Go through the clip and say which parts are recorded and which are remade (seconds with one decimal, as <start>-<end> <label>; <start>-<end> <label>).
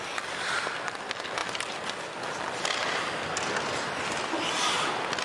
0.0-5.2 recorded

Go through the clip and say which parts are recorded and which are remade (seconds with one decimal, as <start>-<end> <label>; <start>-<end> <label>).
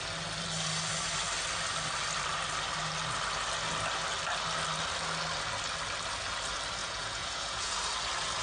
0.0-6.8 recorded; 6.8-7.8 remade; 7.8-8.4 recorded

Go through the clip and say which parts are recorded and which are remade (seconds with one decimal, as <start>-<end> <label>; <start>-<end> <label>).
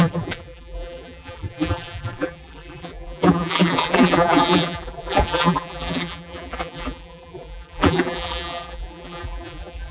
0.0-9.9 remade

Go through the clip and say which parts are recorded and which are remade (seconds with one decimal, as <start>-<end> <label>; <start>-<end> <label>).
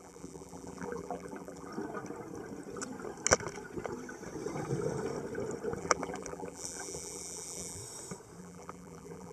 0.0-1.7 remade; 1.7-5.8 recorded; 5.8-7.8 remade; 7.8-8.4 recorded; 8.4-9.3 remade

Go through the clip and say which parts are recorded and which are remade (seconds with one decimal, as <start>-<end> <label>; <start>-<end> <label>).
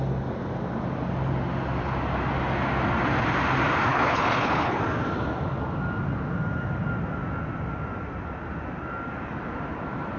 0.0-3.9 recorded; 3.9-4.8 remade; 4.8-10.2 recorded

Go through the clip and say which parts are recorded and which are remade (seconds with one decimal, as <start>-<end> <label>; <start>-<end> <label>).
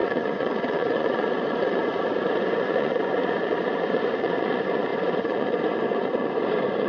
0.0-6.9 remade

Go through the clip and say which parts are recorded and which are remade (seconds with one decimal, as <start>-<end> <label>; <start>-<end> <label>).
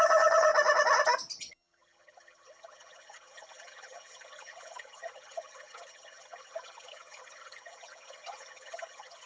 0.0-0.5 remade; 0.5-1.3 recorded; 1.3-9.3 remade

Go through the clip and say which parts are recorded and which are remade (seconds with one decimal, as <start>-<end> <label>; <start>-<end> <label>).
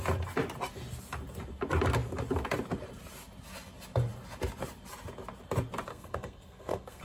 0.0-5.9 recorded; 5.9-7.0 remade